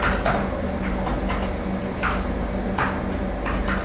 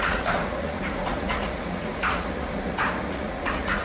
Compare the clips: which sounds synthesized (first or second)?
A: second